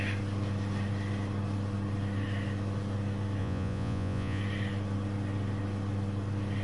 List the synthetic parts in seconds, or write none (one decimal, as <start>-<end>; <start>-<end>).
3.4-4.4